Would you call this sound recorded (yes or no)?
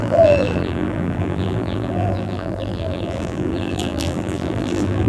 no